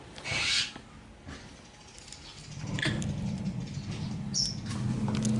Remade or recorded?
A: recorded